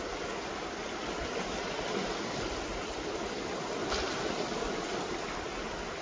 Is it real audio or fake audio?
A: real